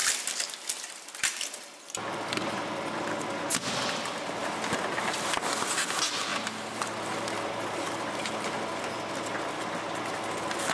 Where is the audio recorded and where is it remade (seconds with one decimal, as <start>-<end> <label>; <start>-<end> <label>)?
0.0-3.5 remade; 3.5-10.7 recorded